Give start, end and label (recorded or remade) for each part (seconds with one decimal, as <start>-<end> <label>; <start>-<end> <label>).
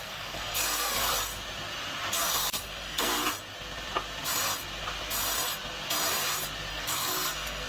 0.0-1.1 remade; 1.1-2.3 recorded; 2.3-3.1 remade; 3.1-6.7 recorded; 6.7-7.7 remade